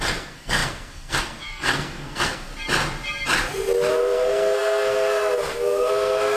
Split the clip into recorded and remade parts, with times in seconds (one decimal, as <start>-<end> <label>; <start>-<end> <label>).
0.0-2.5 remade; 2.5-3.9 recorded; 3.9-6.4 remade